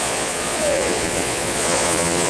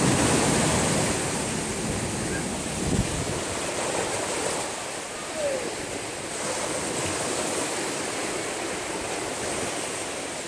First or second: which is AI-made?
first